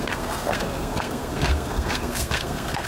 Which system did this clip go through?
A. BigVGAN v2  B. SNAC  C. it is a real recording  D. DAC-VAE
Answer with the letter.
B